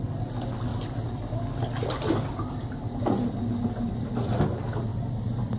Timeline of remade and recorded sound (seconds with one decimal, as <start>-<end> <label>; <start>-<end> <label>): 0.0-0.7 recorded; 0.7-4.1 remade; 4.1-4.9 recorded; 4.9-5.6 remade